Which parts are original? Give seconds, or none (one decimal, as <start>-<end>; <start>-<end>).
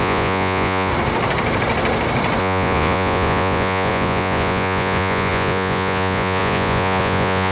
0.9-2.4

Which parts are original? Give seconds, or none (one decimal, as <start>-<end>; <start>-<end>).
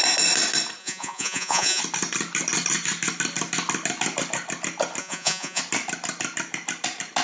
0.0-0.8; 1.8-5.0; 5.6-7.2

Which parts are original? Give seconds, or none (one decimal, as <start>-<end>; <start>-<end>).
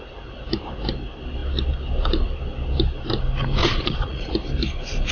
0.0-3.6; 4.3-5.1